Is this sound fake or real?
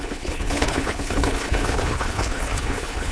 fake